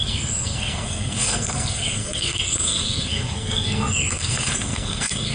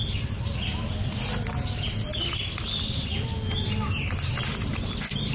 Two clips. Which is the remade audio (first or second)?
first